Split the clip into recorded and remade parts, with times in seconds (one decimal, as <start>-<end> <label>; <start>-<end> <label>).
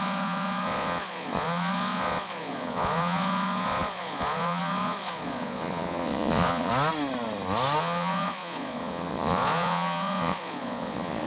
0.0-6.7 remade; 6.7-7.8 recorded; 7.8-11.3 remade